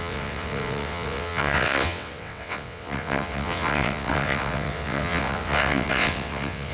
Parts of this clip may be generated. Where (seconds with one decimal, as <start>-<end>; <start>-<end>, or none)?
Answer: 0.0-6.7